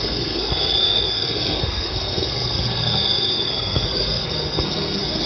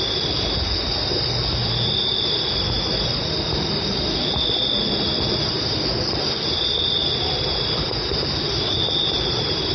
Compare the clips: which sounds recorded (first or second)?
second